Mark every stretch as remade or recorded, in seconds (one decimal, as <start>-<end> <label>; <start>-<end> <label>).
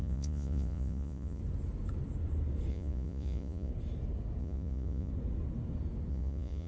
0.0-1.4 remade; 1.4-2.7 recorded; 2.7-3.7 remade; 3.7-4.4 recorded; 4.4-5.1 remade; 5.1-6.1 recorded; 6.1-6.7 remade